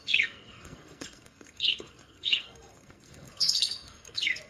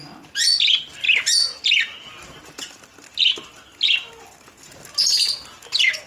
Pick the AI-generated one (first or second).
first